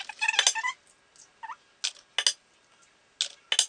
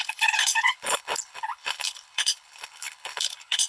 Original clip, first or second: first